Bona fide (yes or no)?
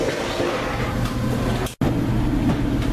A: yes